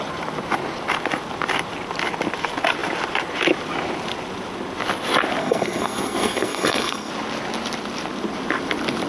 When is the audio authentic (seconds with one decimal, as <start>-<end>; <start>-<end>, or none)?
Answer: 0.0-5.4; 7.1-9.1